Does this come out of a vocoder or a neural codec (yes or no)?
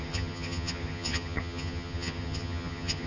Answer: yes